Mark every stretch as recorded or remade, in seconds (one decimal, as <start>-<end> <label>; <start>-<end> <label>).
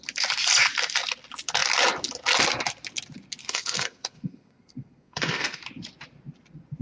0.0-3.4 recorded; 3.4-5.6 remade; 5.6-6.8 recorded